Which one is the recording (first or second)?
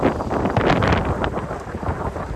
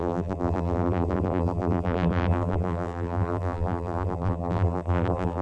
first